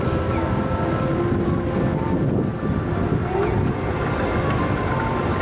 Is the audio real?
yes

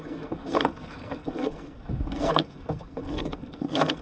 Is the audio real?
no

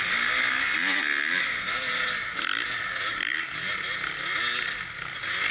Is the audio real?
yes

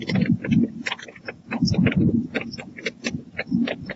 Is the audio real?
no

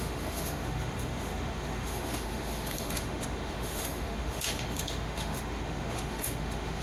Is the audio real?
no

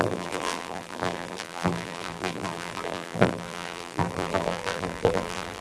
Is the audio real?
no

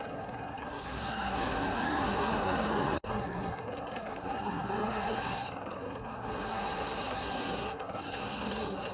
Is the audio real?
no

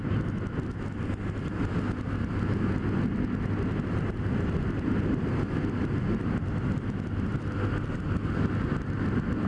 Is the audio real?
yes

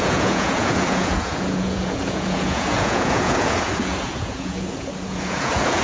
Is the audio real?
no